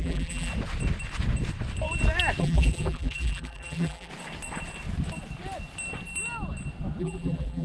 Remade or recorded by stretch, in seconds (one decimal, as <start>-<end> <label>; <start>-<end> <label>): 0.0-0.5 remade; 0.5-2.4 recorded; 2.4-4.1 remade; 4.1-7.0 recorded; 7.0-7.6 remade